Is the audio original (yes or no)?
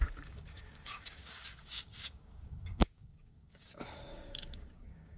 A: no